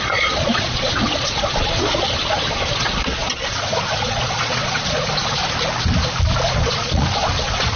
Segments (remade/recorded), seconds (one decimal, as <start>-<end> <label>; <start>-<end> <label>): 0.0-5.4 remade; 5.4-6.5 recorded; 6.5-7.8 remade